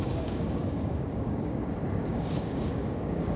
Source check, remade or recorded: remade